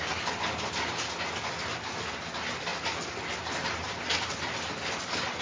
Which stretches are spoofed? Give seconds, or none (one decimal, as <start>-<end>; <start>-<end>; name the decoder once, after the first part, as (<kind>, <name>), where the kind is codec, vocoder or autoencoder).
none